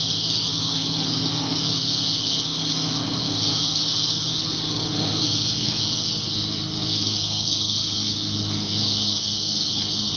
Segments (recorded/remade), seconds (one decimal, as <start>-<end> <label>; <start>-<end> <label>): 0.0-10.2 remade

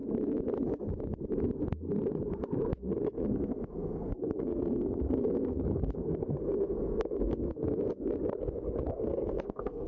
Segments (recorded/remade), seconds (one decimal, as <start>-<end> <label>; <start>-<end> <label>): 0.0-2.8 recorded; 2.8-7.8 remade; 7.8-8.9 recorded; 8.9-9.9 remade

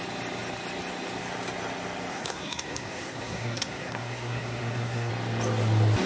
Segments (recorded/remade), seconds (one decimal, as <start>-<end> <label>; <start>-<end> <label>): 0.0-2.1 recorded; 2.1-5.1 remade; 5.1-6.1 recorded

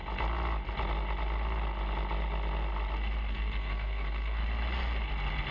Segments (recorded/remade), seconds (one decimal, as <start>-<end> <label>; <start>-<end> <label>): 0.0-3.3 recorded; 3.3-4.4 remade; 4.4-5.5 recorded